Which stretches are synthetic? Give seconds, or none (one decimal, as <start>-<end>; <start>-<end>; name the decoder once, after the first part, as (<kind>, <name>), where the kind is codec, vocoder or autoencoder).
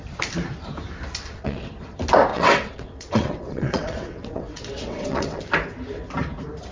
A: 1.2-1.7 (vocoder, WaveNeXt); 2.3-5.4